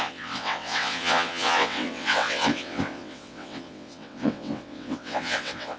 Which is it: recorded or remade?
remade